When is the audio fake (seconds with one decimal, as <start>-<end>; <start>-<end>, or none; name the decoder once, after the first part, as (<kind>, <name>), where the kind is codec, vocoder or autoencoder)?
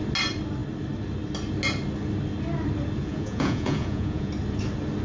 3.0-4.3 (vocoder, Vocos)